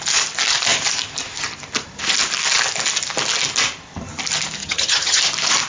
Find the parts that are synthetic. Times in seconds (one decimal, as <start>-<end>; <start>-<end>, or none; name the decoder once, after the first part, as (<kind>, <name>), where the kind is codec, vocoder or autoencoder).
4.6-5.2 (vocoder, HiFi-GAN)